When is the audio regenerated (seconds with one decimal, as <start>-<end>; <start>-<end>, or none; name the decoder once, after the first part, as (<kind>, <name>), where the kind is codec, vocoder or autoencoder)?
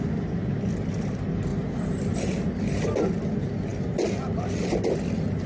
1.5-2.4 (vocoder, BigVGAN v2)